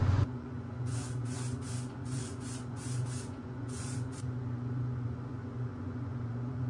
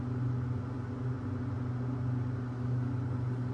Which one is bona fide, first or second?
second